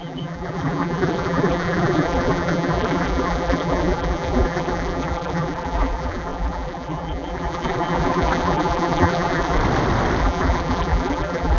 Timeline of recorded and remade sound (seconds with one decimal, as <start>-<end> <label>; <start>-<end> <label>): 0.0-9.6 remade; 9.6-10.2 recorded; 10.2-11.6 remade